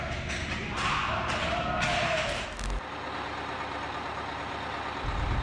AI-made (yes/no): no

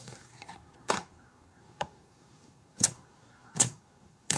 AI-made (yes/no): yes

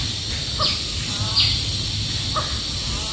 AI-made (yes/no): no